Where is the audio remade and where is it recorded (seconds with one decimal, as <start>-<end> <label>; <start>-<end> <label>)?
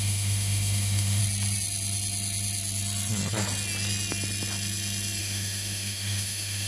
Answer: 0.0-1.2 remade; 1.2-5.2 recorded; 5.2-6.7 remade